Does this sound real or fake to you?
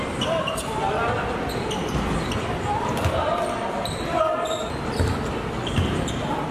fake